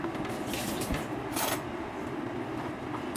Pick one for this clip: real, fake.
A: real